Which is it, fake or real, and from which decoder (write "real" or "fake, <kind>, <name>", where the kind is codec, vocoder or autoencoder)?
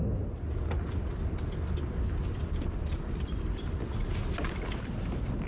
real